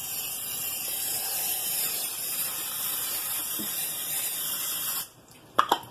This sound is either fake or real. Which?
fake